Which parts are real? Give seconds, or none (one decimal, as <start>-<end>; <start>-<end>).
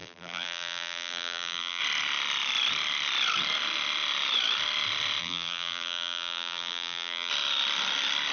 1.8-5.2; 7.3-8.3